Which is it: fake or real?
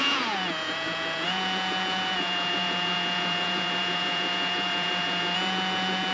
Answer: fake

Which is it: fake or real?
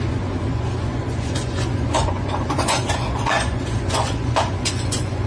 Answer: fake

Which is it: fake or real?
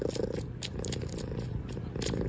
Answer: real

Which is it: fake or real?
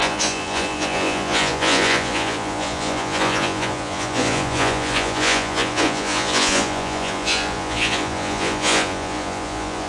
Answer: fake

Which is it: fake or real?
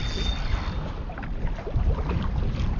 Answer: real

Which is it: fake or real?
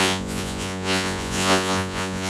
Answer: fake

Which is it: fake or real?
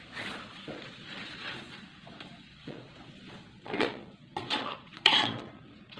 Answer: fake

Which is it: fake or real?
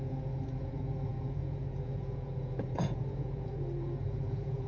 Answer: fake